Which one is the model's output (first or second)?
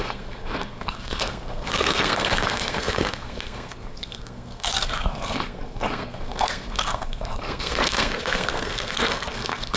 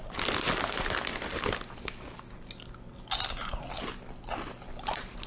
first